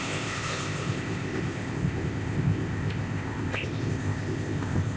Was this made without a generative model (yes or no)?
no